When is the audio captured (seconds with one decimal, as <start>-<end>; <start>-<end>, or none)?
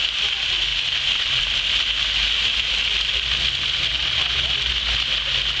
0.0-2.5; 3.1-5.6